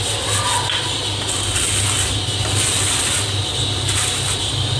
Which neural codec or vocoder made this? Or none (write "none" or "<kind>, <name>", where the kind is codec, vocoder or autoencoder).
none